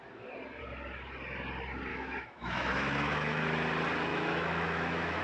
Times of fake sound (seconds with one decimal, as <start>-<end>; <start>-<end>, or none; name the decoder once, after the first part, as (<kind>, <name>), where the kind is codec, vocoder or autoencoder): 1.9-3.4 (autoencoder, DAC-VAE); 4.1-5.2

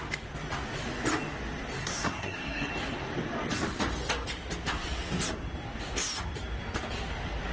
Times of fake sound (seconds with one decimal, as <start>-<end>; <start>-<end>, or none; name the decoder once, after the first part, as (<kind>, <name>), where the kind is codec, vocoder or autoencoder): 1.8-2.7 (codec, SNAC)